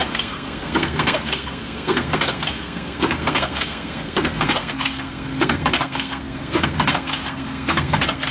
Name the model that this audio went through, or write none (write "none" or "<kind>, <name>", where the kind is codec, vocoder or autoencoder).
codec, SNAC